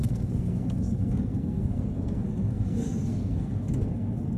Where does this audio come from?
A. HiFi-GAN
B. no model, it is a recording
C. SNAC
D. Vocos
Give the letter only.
C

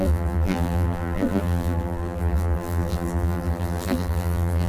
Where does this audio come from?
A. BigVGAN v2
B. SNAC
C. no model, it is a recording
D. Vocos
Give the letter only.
A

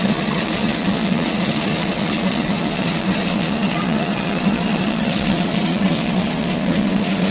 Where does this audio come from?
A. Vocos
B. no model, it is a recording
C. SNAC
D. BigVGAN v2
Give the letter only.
A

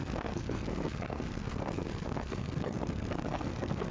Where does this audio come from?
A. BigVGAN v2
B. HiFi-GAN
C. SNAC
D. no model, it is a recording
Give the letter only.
C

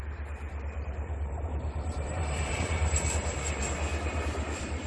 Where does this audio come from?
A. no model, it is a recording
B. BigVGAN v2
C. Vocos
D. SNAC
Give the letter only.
B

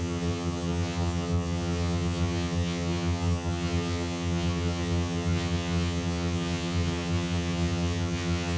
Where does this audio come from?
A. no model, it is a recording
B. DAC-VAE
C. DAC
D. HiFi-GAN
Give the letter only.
D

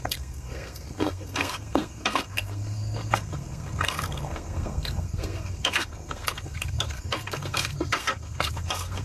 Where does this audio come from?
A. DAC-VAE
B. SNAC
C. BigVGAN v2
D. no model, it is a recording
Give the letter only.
B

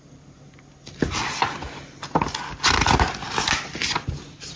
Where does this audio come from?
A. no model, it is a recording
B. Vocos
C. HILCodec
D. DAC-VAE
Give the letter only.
A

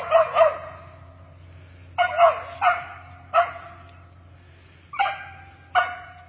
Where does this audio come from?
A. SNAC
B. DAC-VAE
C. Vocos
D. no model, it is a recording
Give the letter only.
D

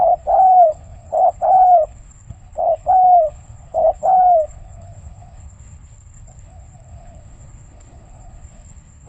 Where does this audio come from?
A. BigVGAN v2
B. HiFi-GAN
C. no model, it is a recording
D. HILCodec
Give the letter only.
D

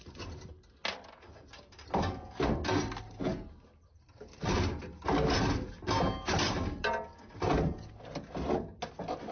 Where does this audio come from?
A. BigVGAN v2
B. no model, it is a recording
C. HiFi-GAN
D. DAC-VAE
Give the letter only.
B